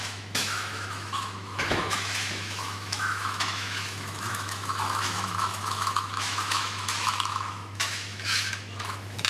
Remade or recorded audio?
remade